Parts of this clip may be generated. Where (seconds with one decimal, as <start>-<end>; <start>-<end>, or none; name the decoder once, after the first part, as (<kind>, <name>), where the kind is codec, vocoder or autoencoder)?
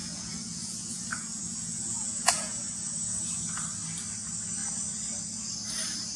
0.0-3.4 (vocoder, Vocos)